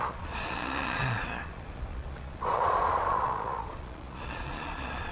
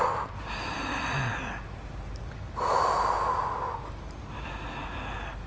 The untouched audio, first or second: second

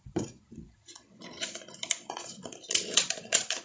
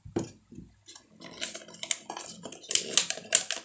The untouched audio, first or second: second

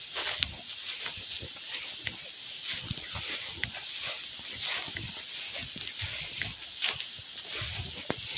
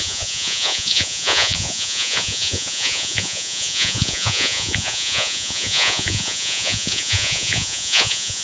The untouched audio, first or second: first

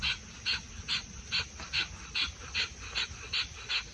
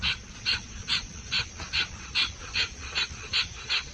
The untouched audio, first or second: first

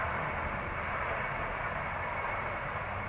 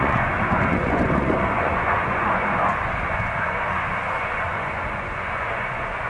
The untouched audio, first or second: first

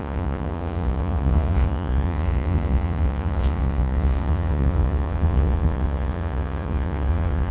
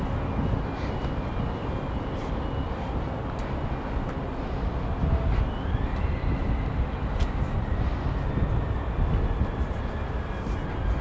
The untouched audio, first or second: second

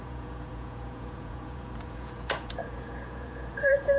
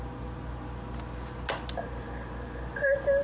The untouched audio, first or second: second